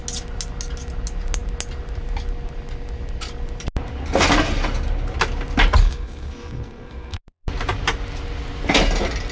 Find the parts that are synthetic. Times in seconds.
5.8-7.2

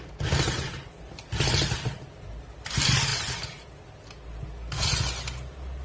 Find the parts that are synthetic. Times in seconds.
none

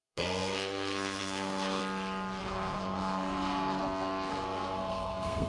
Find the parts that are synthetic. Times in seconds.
0.0-1.8; 2.4-3.8; 4.3-5.5

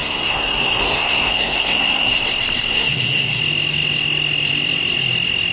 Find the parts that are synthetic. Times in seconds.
0.0-2.2; 2.7-3.4

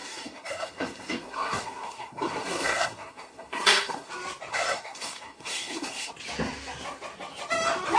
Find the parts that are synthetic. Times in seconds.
0.0-4.1; 4.5-6.1

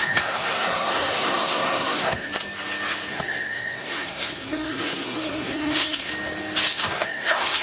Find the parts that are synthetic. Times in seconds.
0.0-2.3; 3.1-6.1; 6.7-7.6